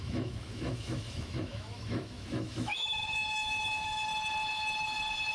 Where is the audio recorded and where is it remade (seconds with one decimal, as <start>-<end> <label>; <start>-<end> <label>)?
0.0-4.1 remade; 4.1-5.3 recorded